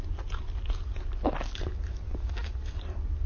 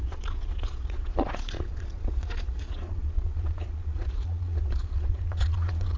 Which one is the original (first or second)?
first